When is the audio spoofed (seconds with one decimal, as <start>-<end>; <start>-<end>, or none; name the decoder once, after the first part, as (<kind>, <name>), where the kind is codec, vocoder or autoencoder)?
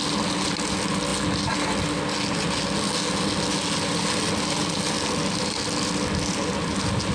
none